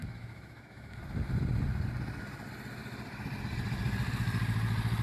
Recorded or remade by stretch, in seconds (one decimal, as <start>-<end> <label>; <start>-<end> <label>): 0.0-1.0 remade; 1.0-5.0 recorded